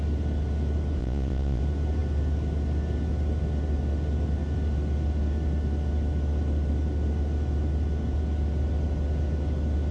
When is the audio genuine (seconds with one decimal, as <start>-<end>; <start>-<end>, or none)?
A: 0.0-1.0; 1.6-9.9